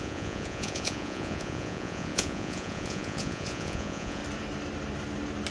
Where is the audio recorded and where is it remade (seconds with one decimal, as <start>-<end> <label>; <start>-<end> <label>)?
0.0-4.2 remade; 4.2-5.5 recorded